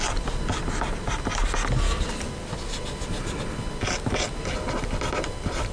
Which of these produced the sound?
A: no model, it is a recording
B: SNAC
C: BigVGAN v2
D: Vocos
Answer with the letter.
A